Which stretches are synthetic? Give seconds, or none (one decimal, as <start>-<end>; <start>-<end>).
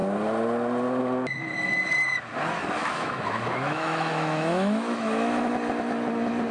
2.8-5.5